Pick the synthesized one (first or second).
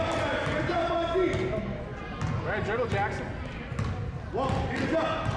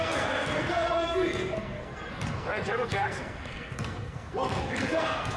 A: second